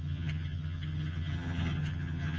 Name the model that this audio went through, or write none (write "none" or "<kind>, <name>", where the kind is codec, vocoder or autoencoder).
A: vocoder, HiFi-GAN